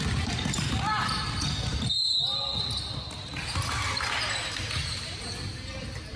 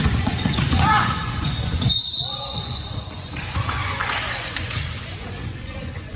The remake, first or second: second